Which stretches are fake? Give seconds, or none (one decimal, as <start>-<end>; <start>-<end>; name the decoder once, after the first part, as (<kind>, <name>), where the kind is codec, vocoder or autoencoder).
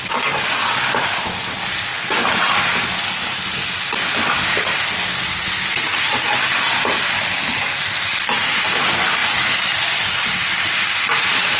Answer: none